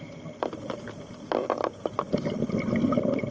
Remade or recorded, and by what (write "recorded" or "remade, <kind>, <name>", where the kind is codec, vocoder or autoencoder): recorded